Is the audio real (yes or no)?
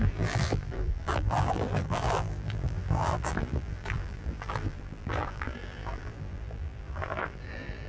no